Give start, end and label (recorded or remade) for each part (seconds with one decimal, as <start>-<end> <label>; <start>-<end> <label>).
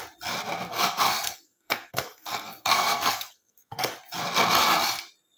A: 0.0-0.7 recorded; 0.7-3.9 remade; 3.9-5.4 recorded